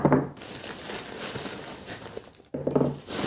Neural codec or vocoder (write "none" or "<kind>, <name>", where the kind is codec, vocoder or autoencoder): none